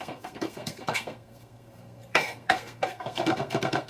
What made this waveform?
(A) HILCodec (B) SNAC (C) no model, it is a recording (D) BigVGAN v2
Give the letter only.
B